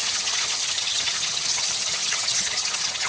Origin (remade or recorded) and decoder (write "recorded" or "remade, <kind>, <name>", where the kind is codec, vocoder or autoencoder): remade, vocoder, HiFi-GAN